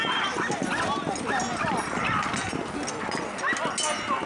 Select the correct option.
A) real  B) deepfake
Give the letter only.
A